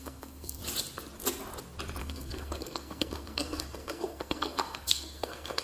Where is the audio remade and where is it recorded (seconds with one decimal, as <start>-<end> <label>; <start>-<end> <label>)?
0.0-0.6 remade; 0.6-2.0 recorded; 2.0-5.6 remade